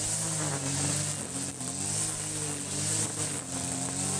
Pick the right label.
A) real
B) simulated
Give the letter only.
A